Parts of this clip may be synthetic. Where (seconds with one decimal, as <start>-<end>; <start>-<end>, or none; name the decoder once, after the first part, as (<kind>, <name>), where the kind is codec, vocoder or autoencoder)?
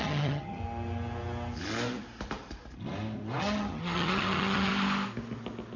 0.0-0.6 (vocoder, HiFi-GAN); 3.4-4.7